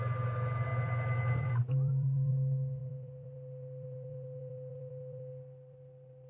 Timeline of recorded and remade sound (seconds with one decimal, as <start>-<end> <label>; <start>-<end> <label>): 0.0-6.3 recorded